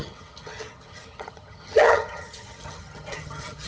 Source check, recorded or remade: remade